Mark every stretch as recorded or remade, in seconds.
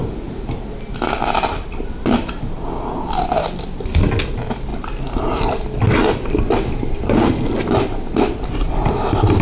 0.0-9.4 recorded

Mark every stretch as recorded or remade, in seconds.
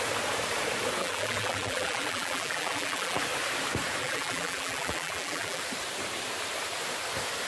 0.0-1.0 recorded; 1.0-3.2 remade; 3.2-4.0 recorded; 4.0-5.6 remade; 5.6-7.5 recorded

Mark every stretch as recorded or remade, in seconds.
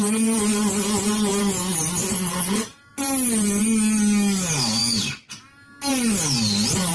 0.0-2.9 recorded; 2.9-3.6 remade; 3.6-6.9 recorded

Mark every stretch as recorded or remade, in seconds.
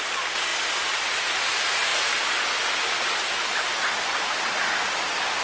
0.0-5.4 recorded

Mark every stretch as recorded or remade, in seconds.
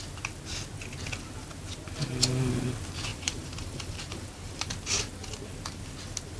0.0-3.1 recorded; 3.1-4.7 remade; 4.7-6.4 recorded